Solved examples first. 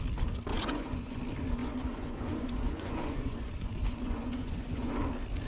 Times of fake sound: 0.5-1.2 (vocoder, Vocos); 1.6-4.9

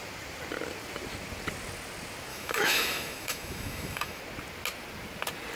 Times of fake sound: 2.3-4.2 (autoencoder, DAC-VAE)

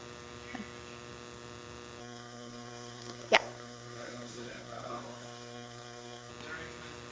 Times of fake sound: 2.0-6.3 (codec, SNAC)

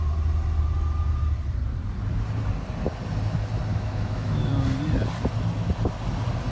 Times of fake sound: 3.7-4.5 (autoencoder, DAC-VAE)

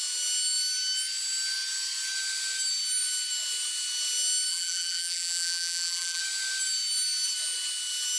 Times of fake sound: 4.5-6.2 (vocoder, BigVGAN v2)

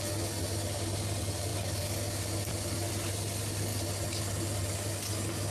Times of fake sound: none